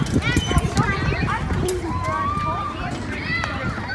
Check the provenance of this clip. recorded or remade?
recorded